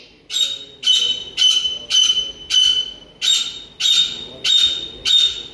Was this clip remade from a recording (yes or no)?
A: no